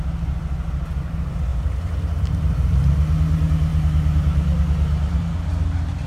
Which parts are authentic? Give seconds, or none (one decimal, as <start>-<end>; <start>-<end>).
0.0-1.5; 2.5-6.1